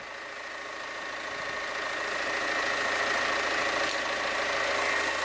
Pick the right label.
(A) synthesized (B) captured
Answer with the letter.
B